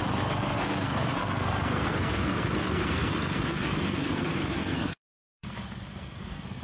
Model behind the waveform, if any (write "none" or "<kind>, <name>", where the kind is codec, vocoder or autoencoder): codec, SNAC